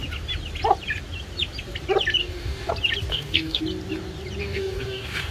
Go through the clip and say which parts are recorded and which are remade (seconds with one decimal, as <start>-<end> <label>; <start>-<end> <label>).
0.0-2.2 recorded; 2.2-2.7 remade; 2.7-3.1 recorded; 3.1-3.6 remade; 3.6-4.4 recorded; 4.4-5.3 remade